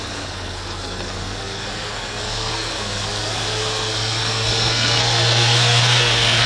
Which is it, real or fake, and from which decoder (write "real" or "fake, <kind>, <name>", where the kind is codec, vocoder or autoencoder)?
fake, codec, SNAC